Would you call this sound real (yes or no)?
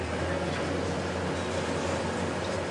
yes